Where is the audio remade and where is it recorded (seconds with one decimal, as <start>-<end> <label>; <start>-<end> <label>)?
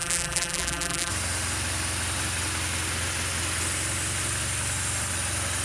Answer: 0.0-1.1 remade; 1.1-5.6 recorded